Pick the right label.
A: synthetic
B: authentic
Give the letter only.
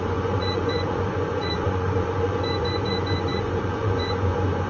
A